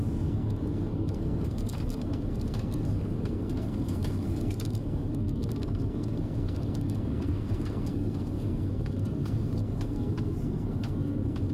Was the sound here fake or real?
fake